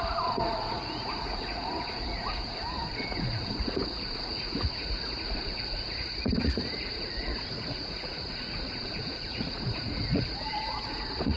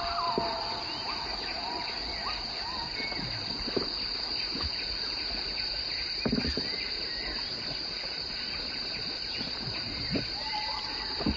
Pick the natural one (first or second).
second